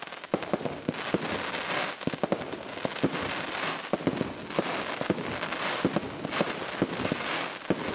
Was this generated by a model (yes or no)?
no